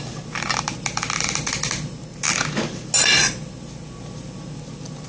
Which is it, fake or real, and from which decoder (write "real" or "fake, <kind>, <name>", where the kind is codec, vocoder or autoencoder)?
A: real